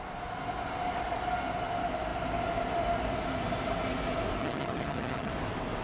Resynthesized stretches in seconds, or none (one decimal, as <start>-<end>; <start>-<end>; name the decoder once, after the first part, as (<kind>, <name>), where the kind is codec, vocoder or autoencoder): 4.4-5.3 (vocoder, HiFi-GAN)